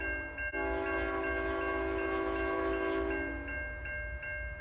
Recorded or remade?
recorded